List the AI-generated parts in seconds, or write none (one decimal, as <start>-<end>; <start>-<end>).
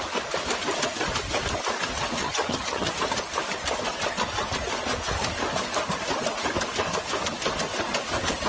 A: 2.2-2.9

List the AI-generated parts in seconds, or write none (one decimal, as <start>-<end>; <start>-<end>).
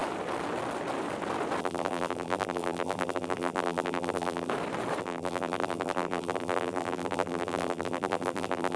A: 1.6-4.5; 5.0-8.8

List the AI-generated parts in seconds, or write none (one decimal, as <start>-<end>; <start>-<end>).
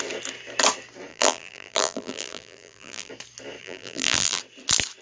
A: 1.1-3.1; 3.6-4.4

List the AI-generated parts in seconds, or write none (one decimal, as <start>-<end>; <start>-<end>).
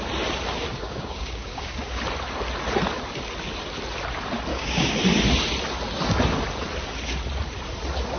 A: 0.7-2.0; 4.5-5.0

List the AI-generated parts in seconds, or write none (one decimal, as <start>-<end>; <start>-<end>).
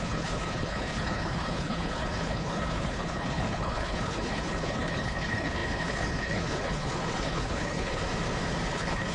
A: 0.0-8.0; 8.7-9.1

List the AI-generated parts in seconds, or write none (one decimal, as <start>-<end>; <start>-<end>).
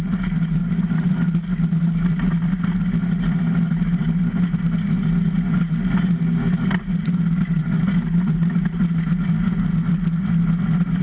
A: none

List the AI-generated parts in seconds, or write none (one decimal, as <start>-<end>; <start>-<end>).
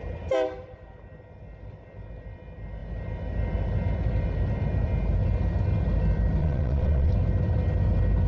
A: 6.4-7.1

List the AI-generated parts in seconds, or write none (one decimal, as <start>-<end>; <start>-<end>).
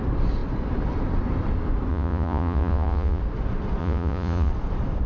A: 1.9-3.2; 3.8-4.5